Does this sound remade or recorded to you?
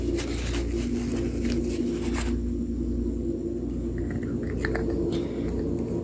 recorded